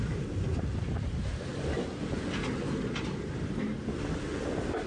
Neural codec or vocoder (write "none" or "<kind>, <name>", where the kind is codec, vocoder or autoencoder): none